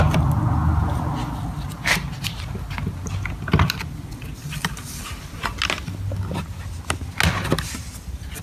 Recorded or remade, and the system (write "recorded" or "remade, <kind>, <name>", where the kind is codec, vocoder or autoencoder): recorded